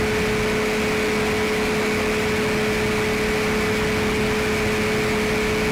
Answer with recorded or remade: recorded